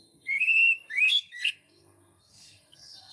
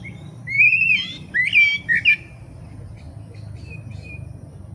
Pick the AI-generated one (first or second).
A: first